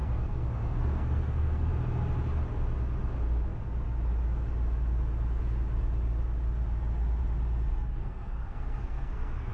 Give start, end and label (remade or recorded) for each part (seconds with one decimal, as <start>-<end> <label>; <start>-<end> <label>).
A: 0.0-1.7 remade; 1.7-8.0 recorded; 8.0-9.5 remade